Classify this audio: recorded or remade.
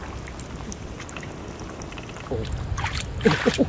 recorded